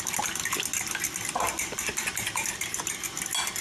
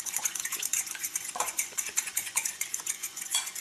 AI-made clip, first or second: second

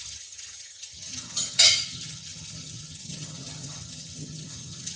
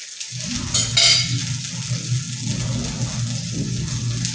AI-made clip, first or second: first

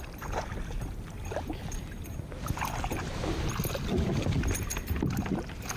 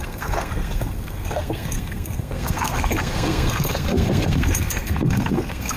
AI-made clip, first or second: second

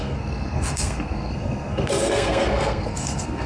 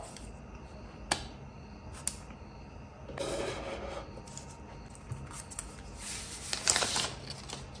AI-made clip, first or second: first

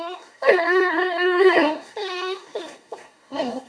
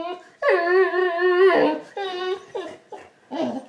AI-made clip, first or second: first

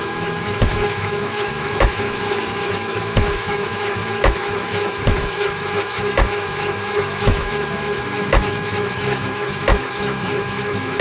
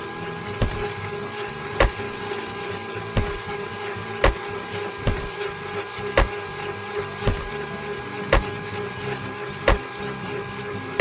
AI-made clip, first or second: first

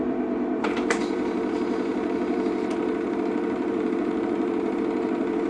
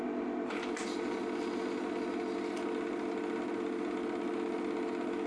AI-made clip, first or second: first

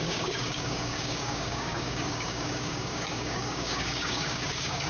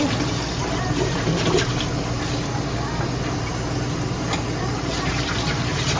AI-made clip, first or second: first